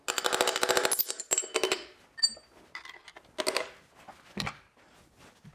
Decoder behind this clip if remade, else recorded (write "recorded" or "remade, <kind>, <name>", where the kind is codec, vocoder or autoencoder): recorded